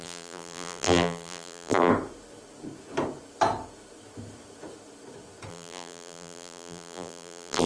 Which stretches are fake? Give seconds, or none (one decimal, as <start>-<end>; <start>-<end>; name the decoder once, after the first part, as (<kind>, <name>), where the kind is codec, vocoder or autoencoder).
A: 0.0-1.9 (vocoder, BigVGAN v2); 5.5-7.7